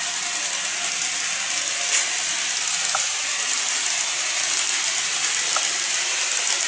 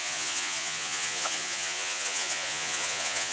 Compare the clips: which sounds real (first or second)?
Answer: first